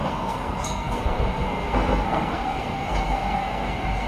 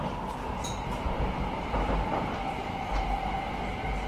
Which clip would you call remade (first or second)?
first